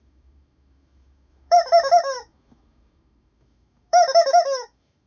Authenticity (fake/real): fake